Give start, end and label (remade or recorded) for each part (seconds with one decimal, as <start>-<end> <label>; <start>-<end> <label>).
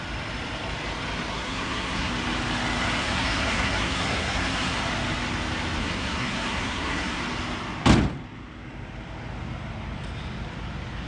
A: 0.0-1.3 recorded; 1.3-2.1 remade; 2.1-3.0 recorded; 3.0-4.8 remade; 4.8-5.8 recorded; 5.8-7.2 remade; 7.2-11.1 recorded